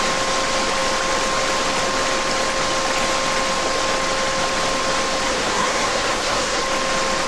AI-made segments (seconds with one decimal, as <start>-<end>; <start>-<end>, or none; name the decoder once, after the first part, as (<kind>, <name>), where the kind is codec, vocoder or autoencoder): 5.3-6.6 (codec, SNAC)